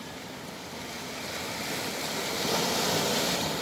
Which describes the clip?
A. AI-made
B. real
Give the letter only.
B